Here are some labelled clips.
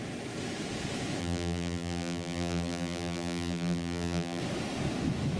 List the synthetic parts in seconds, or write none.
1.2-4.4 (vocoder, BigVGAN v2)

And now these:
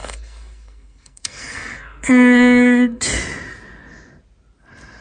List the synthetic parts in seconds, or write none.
0.0-3.0 (codec, SNAC)

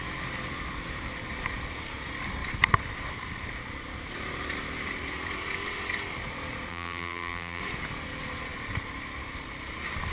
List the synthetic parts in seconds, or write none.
6.7-7.6 (vocoder, BigVGAN v2)

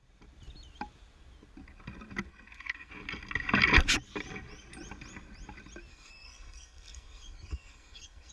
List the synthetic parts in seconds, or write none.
2.3-2.9 (codec, SNAC); 5.9-8.3